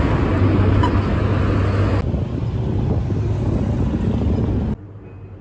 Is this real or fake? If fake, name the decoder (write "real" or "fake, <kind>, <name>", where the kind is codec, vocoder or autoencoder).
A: real